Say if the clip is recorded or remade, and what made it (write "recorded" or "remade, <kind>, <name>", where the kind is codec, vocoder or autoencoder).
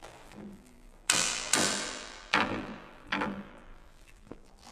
remade, vocoder, BigVGAN v2